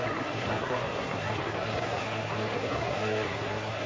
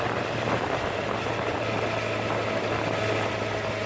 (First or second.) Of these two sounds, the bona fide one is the second